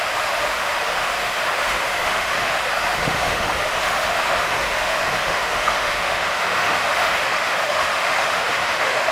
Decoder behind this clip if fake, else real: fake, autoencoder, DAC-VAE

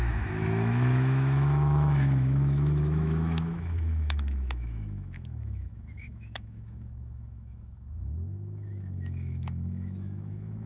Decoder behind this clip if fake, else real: fake, autoencoder, DAC-VAE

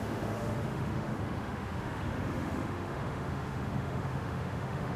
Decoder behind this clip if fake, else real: fake, autoencoder, DAC-VAE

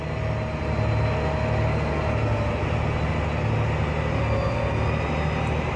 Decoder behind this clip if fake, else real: real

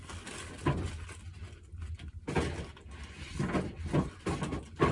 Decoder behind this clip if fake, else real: real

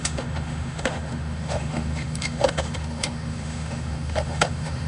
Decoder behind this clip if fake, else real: fake, autoencoder, DAC-VAE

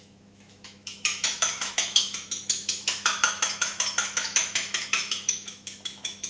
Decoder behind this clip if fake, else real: fake, autoencoder, DAC-VAE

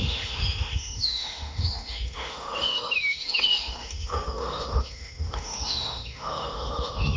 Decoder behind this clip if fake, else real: fake, autoencoder, DAC-VAE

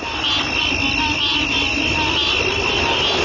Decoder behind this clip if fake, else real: real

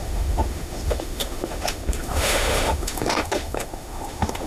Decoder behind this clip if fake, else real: fake, autoencoder, DAC-VAE